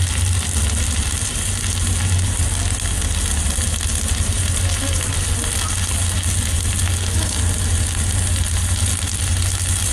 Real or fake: real